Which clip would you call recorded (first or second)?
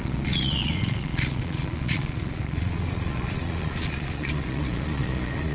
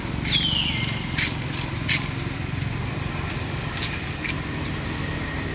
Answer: second